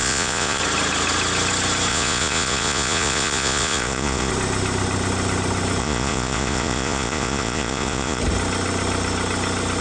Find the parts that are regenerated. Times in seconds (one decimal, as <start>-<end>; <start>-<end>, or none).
0.0-0.6; 1.9-4.3; 5.8-8.2